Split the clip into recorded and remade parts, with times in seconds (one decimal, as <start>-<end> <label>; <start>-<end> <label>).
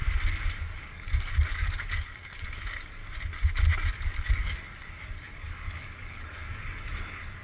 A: 0.0-0.6 recorded; 0.6-3.0 remade; 3.0-3.9 recorded; 3.9-7.4 remade